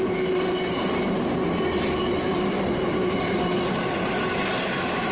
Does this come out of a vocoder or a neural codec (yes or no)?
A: no